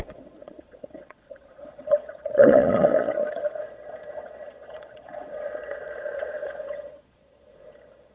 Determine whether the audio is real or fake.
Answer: fake